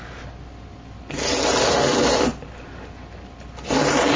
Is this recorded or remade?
recorded